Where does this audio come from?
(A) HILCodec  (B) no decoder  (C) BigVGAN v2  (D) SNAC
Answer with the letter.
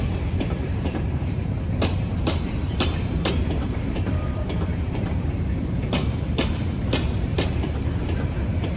C